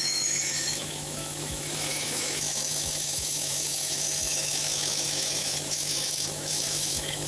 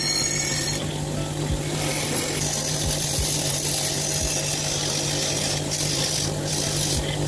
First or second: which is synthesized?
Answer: first